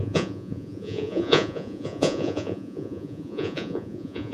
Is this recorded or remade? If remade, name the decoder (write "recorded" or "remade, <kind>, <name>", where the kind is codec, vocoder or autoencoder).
remade, vocoder, Vocos